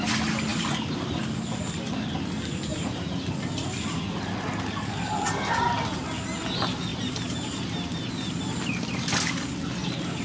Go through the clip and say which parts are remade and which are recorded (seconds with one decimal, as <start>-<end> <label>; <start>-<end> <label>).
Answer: 0.0-2.7 recorded; 2.7-3.3 remade; 3.3-6.9 recorded; 6.9-7.6 remade; 7.6-10.2 recorded